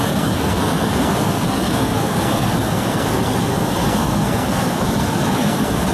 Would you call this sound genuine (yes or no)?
no